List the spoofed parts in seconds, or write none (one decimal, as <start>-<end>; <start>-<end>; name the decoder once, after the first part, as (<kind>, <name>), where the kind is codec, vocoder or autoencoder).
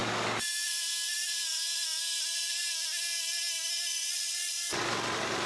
3.9-4.8 (vocoder, Vocos)